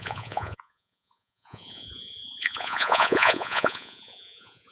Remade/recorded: remade